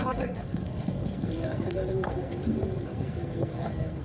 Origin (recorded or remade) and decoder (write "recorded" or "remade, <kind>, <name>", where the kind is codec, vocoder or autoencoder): remade, codec, SNAC